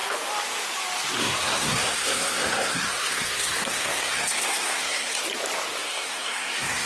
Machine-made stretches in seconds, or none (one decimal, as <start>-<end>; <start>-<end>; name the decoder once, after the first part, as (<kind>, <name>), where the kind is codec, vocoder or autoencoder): 1.2-5.2 (codec, SNAC); 5.8-6.9